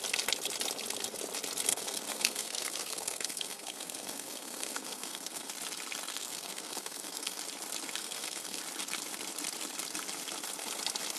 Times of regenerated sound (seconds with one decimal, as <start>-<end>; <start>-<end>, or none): 1.7-5.5; 6.1-7.4; 8.0-8.6

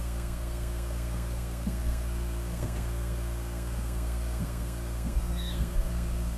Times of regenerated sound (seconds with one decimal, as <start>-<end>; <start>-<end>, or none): 0.0-6.4

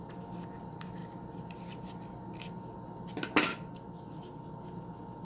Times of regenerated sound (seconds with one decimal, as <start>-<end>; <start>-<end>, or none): none

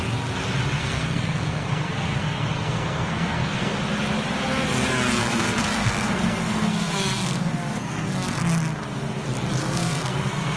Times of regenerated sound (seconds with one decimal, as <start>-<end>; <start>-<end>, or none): 0.8-3.8; 5.2-8.4; 9.6-10.6

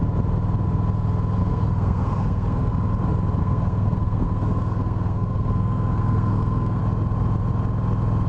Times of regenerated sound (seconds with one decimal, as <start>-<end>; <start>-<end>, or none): 1.4-2.7; 3.4-6.8

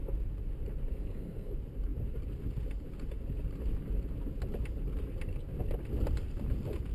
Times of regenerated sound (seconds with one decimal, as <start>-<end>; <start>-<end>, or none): 0.9-1.5